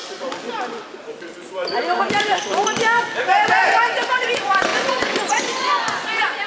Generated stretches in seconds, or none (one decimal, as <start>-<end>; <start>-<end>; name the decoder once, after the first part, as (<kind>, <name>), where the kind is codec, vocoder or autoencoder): 3.6-6.5 (vocoder, Vocos)